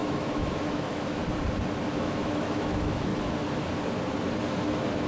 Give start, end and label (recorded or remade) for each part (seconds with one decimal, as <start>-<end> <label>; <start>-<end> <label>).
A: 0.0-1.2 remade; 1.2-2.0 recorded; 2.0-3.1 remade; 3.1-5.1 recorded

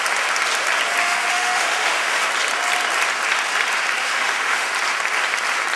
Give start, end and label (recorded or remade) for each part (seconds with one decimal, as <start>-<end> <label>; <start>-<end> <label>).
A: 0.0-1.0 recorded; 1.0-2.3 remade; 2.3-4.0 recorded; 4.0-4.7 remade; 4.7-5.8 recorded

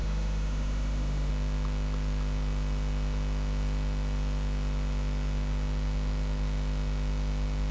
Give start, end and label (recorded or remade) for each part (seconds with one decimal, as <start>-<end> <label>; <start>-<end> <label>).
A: 0.0-1.3 remade; 1.3-7.7 recorded

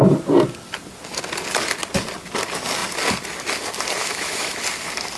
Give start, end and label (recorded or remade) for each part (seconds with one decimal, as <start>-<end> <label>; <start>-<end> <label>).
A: 0.0-4.0 recorded; 4.0-4.6 remade; 4.6-5.2 recorded